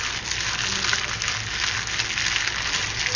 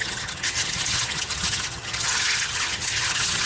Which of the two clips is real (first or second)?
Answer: first